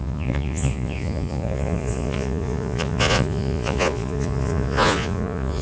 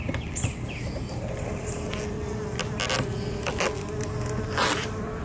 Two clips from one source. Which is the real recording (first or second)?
second